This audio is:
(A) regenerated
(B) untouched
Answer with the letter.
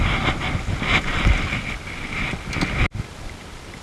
B